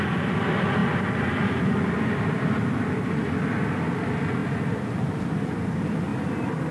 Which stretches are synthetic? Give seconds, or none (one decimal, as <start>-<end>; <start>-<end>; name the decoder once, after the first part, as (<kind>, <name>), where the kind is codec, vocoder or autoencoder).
none